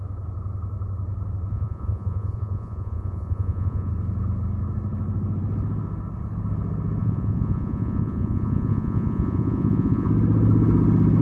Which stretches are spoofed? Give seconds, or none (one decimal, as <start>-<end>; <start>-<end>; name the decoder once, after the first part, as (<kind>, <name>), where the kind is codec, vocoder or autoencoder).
1.5-3.9 (vocoder, Vocos); 7.0-10.1